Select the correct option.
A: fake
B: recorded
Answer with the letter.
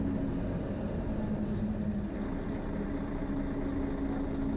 B